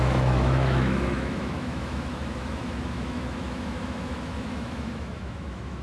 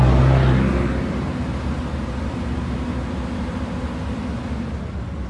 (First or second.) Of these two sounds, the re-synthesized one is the first